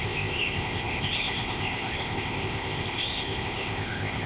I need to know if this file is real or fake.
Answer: fake